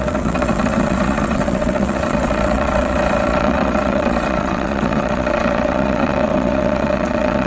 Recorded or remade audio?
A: remade